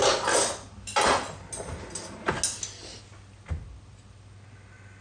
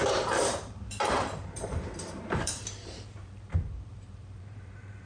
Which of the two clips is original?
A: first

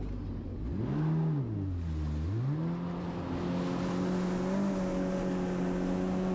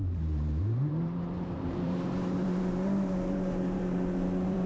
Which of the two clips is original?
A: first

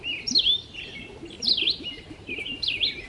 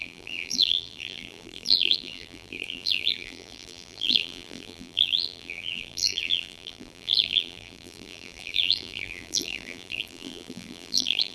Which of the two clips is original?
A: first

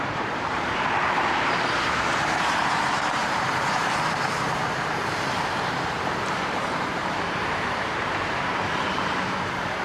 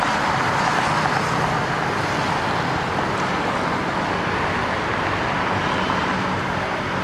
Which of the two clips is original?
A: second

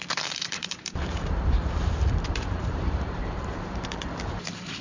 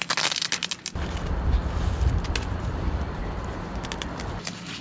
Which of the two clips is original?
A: second